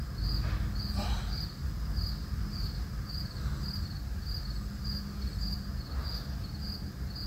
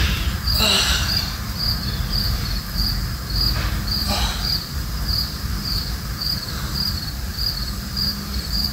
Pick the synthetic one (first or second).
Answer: second